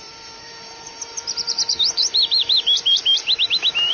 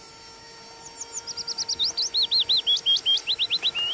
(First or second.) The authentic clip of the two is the second